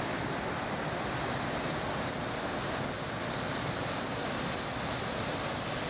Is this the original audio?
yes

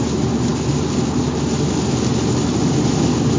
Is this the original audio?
yes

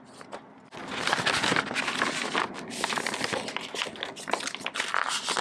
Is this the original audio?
yes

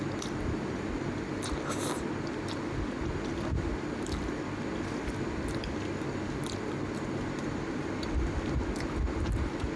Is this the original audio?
yes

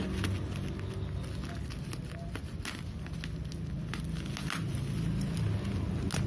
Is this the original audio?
yes